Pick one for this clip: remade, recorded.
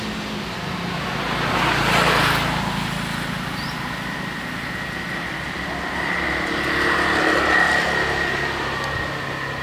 recorded